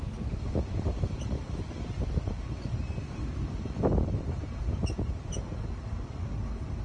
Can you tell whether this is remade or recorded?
recorded